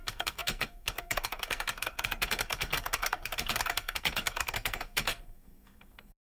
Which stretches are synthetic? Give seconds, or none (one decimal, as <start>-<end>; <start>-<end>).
0.0-6.3